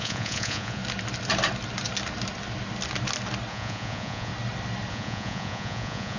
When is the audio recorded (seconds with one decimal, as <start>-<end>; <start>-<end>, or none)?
0.8-3.5; 4.3-4.9